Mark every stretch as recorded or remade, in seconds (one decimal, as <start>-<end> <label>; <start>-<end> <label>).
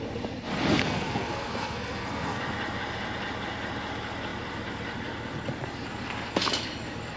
0.0-0.8 recorded; 0.8-2.4 remade; 2.4-7.2 recorded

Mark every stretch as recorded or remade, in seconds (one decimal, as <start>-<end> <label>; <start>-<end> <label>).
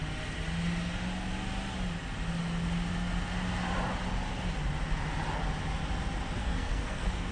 0.0-6.4 recorded; 6.4-7.3 remade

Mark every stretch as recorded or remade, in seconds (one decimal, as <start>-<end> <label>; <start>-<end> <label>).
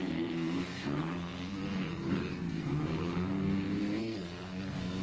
0.0-5.0 remade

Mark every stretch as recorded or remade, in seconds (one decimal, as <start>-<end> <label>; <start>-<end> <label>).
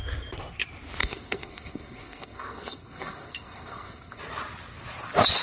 0.0-1.0 recorded; 1.0-4.2 remade; 4.2-5.4 recorded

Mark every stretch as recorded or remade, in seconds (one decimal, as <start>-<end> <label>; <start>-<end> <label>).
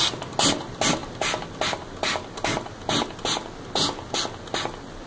0.0-5.1 recorded